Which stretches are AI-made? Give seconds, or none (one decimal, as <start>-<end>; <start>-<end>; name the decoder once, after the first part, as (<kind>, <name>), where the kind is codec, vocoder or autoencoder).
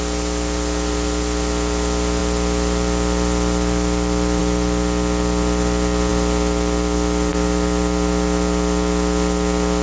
none